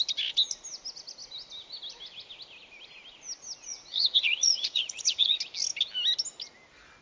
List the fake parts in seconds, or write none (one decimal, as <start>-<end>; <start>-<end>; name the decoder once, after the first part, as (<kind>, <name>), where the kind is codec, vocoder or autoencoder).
3.7-5.4 (vocoder, Vocos)

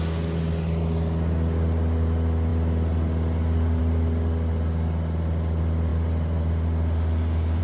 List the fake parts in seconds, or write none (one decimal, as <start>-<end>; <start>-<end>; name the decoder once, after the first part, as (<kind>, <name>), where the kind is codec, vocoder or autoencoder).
none

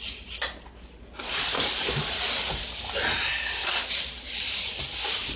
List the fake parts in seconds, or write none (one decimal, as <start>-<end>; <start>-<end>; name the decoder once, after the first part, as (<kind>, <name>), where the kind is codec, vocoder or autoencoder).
none

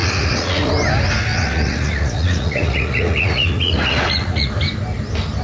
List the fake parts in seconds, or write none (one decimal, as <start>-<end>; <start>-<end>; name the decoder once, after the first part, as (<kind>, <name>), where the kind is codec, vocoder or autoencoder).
0.0-0.7 (vocoder, Vocos); 1.3-4.5

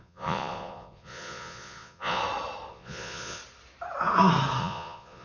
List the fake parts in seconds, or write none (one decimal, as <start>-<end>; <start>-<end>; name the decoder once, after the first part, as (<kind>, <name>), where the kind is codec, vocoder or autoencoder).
0.0-2.2 (vocoder, Vocos); 2.7-3.4; 4.6-5.2

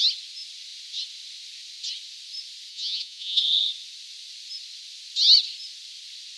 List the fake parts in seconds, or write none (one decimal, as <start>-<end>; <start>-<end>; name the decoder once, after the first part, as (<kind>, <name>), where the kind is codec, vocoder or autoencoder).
2.7-3.4 (vocoder, Vocos)

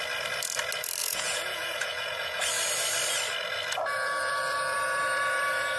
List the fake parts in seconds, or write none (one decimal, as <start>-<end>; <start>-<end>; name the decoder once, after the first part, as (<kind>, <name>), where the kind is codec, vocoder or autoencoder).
1.0-2.4 (vocoder, Vocos)